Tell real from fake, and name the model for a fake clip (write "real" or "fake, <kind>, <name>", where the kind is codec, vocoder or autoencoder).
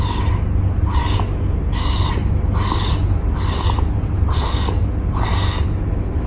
real